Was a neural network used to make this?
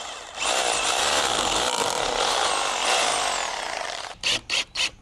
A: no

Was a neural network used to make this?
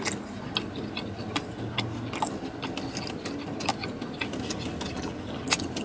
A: no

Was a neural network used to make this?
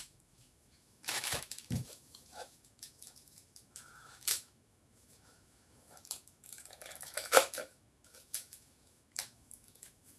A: yes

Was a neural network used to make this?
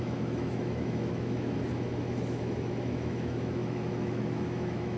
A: yes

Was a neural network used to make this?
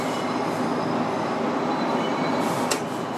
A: yes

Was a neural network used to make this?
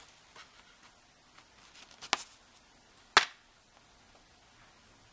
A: no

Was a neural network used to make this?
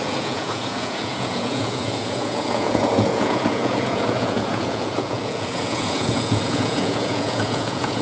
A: yes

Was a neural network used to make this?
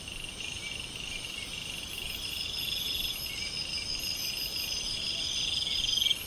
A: no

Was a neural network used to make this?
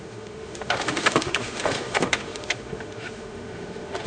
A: yes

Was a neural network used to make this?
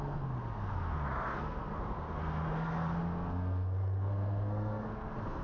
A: yes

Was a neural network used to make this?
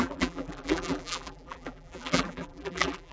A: yes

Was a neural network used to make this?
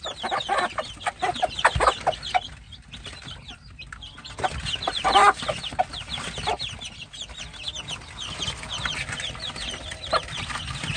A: no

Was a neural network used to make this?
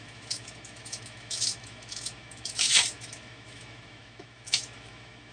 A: yes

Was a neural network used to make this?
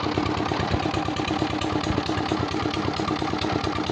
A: no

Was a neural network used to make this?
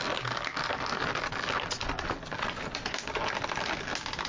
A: no